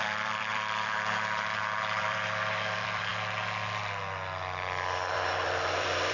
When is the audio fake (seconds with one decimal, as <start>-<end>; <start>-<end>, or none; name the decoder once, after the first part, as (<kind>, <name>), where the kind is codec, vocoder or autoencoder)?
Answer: 0.0-3.1 (vocoder, BigVGAN v2); 5.1-6.1